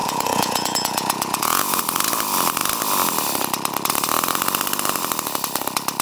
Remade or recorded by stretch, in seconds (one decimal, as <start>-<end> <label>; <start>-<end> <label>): 0.0-1.8 remade; 1.8-6.0 recorded